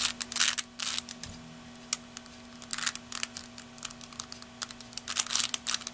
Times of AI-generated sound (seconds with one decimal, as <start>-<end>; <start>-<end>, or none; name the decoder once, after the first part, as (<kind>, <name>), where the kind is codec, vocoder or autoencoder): none